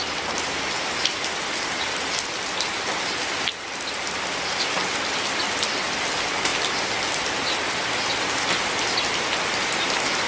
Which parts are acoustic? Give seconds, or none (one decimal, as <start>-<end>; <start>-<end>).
0.0-10.3